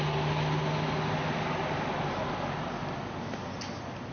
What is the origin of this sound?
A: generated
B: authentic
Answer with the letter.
B